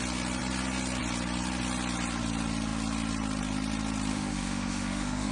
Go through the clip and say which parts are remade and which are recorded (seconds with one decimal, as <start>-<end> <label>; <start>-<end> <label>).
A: 0.0-4.1 recorded; 4.1-5.3 remade